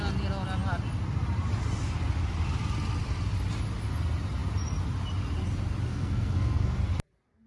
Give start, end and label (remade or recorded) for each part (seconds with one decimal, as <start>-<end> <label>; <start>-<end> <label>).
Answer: 0.0-5.9 recorded; 5.9-6.8 remade; 6.8-7.5 recorded